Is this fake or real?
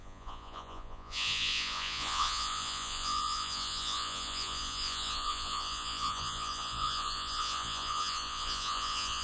fake